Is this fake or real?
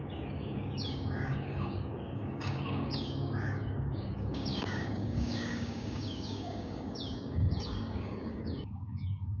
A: fake